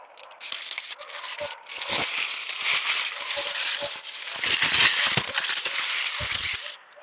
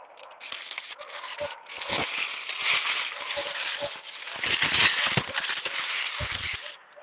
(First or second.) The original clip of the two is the second